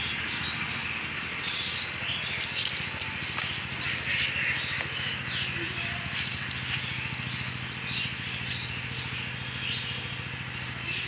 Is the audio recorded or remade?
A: recorded